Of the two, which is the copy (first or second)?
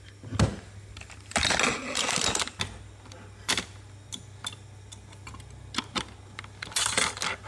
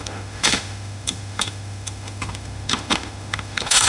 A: second